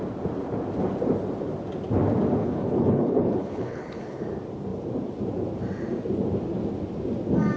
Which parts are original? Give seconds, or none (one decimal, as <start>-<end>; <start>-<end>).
0.0-2.4; 4.2-7.6